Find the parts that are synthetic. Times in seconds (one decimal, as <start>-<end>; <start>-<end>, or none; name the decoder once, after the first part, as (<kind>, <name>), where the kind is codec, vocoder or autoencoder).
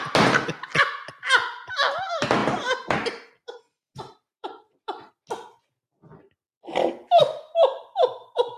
2.4-5.1 (vocoder, BigVGAN v2)